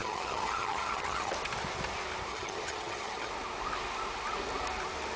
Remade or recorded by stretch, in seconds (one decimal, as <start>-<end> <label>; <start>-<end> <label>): 0.0-1.3 remade; 1.3-2.3 recorded; 2.3-3.3 remade; 3.3-5.2 recorded